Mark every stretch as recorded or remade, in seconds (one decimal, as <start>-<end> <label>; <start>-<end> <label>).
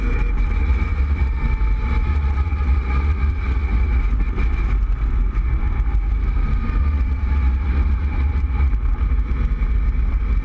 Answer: 0.0-0.6 recorded; 0.6-1.4 remade; 1.4-2.1 recorded; 2.1-4.0 remade; 4.0-6.8 recorded; 6.8-8.7 remade; 8.7-10.4 recorded